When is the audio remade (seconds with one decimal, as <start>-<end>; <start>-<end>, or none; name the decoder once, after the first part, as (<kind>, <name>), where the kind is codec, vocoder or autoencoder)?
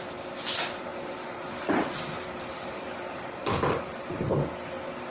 0.9-4.0 (vocoder, BigVGAN v2)